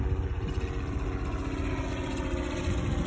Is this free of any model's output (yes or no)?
yes